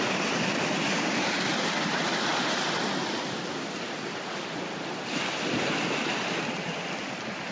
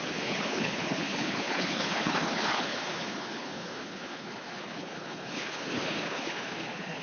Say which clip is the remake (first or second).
second